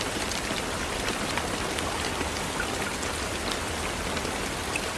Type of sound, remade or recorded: recorded